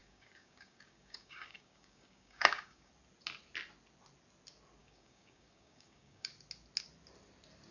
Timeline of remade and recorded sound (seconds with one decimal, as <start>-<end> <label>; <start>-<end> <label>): 0.0-2.9 remade; 2.9-4.8 recorded; 4.8-6.3 remade; 6.3-7.7 recorded